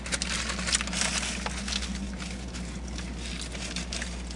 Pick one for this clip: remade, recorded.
recorded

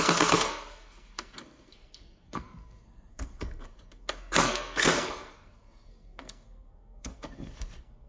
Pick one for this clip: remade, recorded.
remade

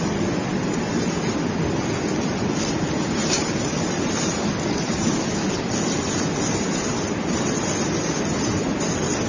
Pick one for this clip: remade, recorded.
recorded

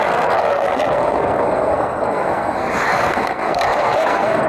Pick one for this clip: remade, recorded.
remade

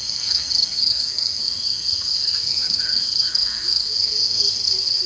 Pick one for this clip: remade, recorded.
remade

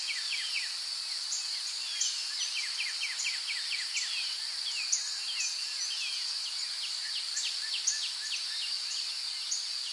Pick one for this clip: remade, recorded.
recorded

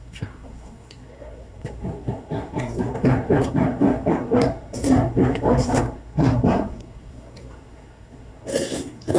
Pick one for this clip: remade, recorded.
remade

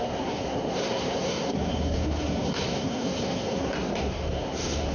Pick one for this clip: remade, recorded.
remade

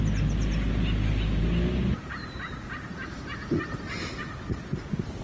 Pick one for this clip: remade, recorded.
recorded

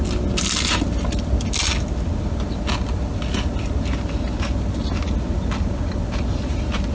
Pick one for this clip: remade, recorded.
recorded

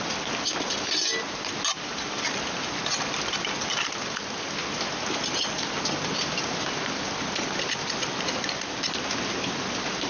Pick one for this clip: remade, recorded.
recorded